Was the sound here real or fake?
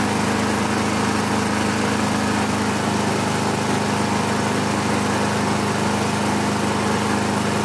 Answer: real